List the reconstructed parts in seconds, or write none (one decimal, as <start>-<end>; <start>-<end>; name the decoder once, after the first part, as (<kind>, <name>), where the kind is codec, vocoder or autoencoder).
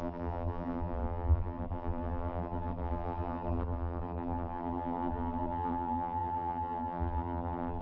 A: 0.0-7.8 (vocoder, BigVGAN v2)